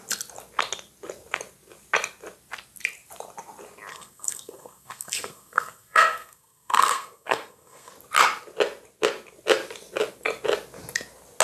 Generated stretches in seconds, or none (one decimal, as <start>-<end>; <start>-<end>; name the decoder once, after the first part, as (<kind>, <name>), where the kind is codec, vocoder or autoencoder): 3.9-7.9 (codec, SNAC)